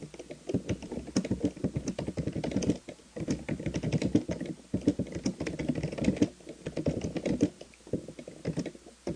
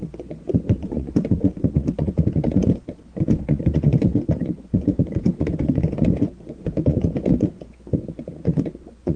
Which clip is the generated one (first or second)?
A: second